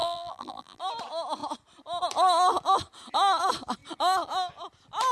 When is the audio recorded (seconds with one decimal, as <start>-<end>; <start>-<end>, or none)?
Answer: 0.8-5.1